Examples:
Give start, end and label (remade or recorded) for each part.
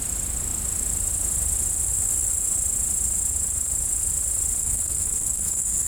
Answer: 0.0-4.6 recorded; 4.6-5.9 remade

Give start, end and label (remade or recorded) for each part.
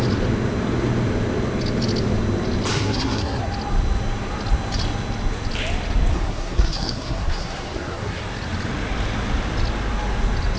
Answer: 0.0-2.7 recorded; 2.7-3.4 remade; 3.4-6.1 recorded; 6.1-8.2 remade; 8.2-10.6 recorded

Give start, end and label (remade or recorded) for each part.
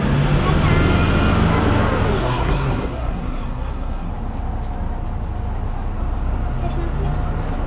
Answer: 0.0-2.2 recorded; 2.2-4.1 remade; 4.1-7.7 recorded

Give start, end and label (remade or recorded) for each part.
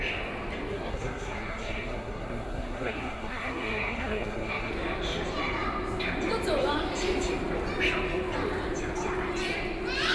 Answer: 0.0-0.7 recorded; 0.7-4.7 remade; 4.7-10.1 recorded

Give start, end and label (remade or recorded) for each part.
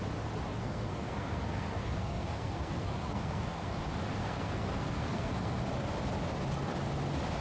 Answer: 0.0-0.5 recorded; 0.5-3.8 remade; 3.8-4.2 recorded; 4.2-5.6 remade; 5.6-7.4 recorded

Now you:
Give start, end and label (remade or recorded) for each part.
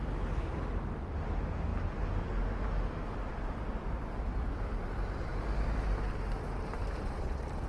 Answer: 0.0-7.7 recorded